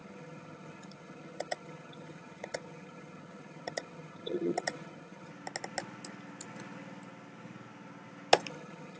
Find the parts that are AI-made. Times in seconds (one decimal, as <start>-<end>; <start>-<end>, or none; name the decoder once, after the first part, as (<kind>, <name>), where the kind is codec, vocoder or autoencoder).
0.0-5.3 (vocoder, HiFi-GAN); 8.5-9.0